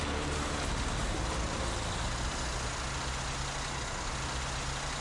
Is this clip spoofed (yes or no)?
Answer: no